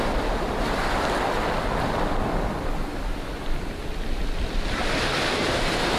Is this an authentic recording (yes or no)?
yes